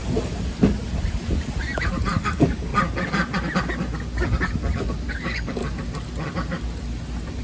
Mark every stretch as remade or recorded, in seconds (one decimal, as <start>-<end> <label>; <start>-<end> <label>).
0.0-2.2 recorded; 2.2-2.7 remade; 2.7-5.1 recorded; 5.1-5.6 remade; 5.6-7.4 recorded